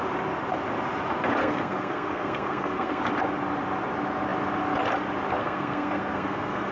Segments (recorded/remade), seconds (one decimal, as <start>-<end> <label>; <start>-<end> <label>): 0.0-1.4 recorded; 1.4-3.0 remade; 3.0-5.4 recorded; 5.4-6.7 remade